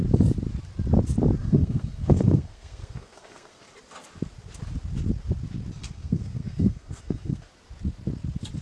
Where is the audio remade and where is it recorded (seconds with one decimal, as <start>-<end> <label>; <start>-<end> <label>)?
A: 0.0-1.4 recorded; 1.4-3.6 remade; 3.6-5.8 recorded; 5.8-7.5 remade; 7.5-8.6 recorded